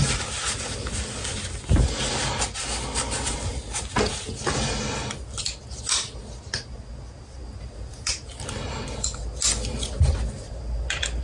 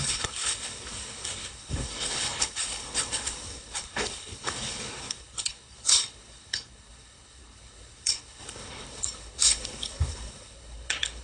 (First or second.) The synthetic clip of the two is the second